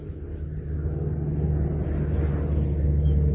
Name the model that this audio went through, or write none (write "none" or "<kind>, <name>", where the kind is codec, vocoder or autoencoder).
none